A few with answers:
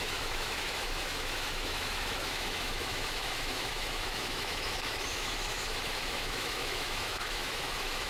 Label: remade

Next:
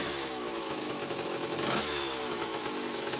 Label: remade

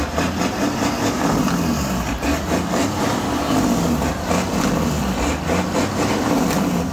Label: recorded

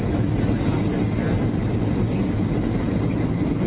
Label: recorded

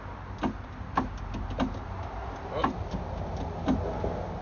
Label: recorded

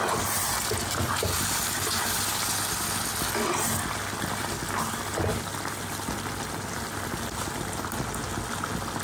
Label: recorded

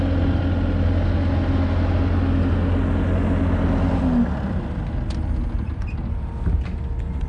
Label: recorded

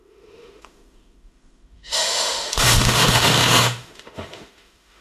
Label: remade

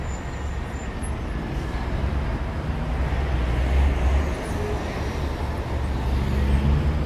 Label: recorded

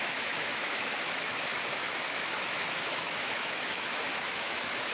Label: remade